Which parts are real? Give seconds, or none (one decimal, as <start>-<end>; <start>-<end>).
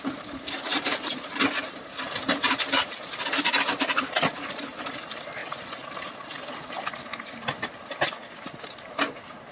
5.4-8.7